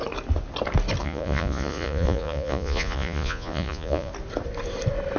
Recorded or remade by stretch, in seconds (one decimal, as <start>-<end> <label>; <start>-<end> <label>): 0.0-1.0 recorded; 1.0-4.1 remade; 4.1-5.2 recorded